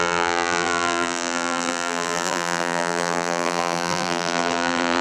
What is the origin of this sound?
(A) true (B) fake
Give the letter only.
B